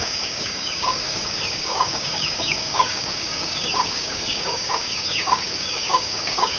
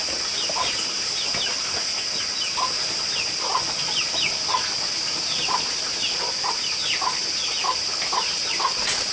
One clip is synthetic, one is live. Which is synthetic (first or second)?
first